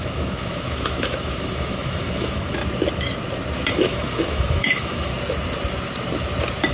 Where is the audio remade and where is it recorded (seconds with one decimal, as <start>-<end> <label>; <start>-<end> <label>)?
0.0-2.6 remade; 2.6-3.7 recorded; 3.7-5.1 remade; 5.1-6.7 recorded